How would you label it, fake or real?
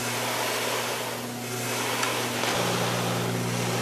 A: real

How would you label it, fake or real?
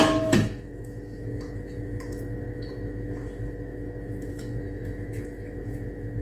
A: fake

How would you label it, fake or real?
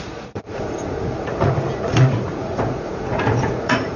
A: fake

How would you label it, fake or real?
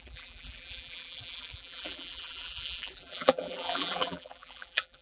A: fake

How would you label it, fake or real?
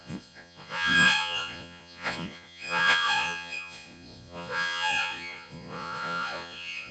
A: fake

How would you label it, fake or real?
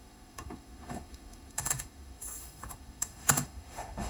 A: fake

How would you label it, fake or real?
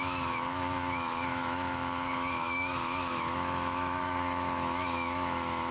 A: fake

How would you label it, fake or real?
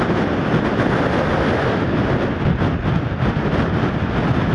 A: real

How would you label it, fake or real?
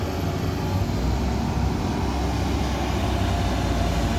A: real